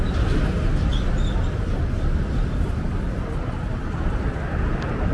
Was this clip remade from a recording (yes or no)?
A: no